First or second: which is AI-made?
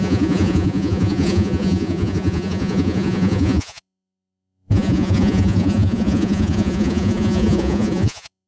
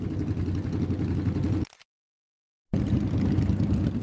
first